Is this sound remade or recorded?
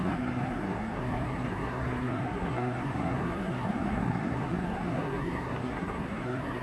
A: remade